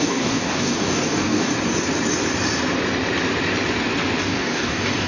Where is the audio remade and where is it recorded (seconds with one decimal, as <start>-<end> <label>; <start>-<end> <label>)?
0.0-1.5 remade; 1.5-4.2 recorded; 4.2-5.1 remade